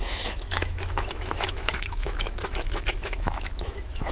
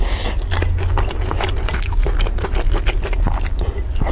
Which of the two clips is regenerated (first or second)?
first